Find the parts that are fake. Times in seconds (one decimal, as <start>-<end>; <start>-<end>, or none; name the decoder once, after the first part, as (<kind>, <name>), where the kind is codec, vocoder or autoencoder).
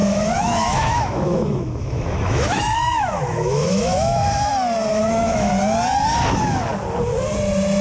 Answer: 0.0-4.5 (autoencoder, DAC-VAE); 4.9-5.5